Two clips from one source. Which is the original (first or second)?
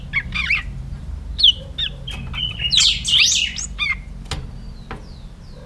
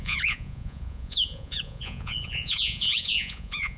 first